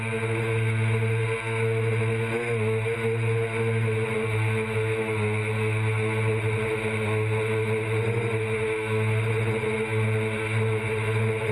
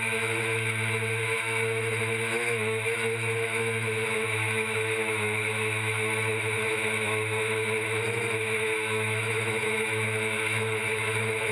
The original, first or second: first